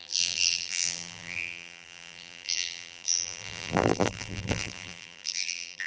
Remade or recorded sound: remade